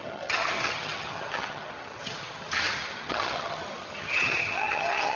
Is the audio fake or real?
fake